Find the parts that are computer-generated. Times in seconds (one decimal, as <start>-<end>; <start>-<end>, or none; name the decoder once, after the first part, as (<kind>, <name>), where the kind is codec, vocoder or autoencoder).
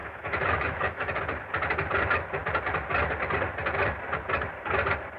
0.0-1.2 (autoencoder, DAC-VAE)